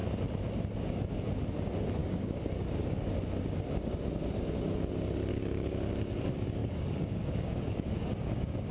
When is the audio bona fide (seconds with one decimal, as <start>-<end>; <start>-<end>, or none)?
0.0-2.0; 3.1-5.3; 5.9-6.6